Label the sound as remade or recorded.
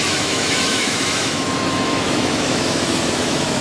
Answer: remade